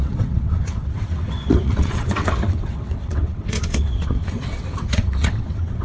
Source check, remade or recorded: remade